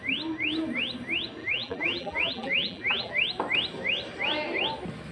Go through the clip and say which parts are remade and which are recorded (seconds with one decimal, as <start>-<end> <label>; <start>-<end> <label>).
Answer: 0.0-1.4 recorded; 1.4-3.1 remade; 3.1-5.1 recorded